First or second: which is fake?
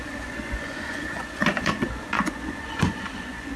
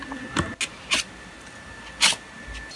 first